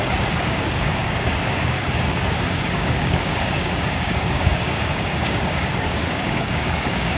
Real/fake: fake